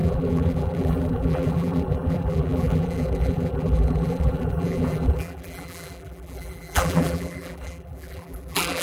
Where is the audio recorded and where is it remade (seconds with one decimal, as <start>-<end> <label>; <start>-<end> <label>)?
0.0-8.8 remade